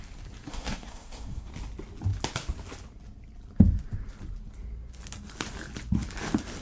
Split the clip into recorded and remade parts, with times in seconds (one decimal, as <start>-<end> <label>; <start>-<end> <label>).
0.0-0.5 recorded; 0.5-1.5 remade; 1.5-6.6 recorded